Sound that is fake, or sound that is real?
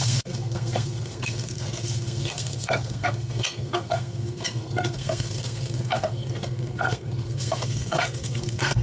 fake